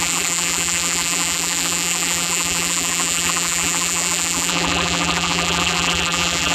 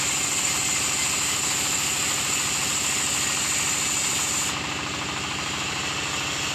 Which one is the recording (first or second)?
second